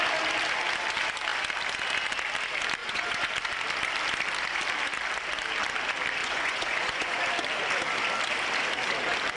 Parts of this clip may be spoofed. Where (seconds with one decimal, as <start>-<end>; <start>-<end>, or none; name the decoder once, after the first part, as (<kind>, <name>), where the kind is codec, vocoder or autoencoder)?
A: 2.8-3.3 (vocoder, Vocos); 6.2-7.2